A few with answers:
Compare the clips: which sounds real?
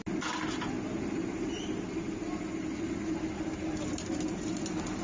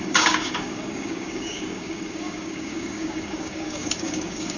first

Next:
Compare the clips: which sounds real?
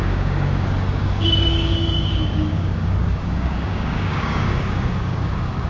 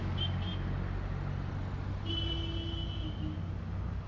second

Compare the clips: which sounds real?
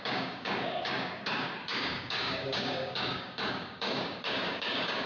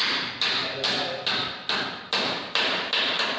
second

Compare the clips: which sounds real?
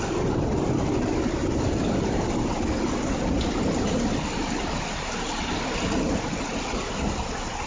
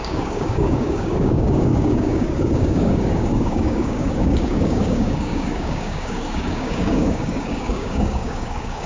first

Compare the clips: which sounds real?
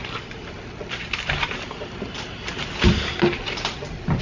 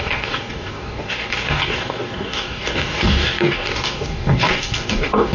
first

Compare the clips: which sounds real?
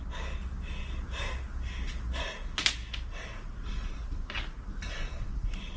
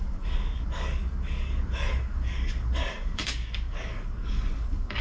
first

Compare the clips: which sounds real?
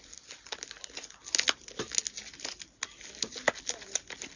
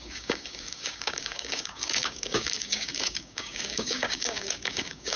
first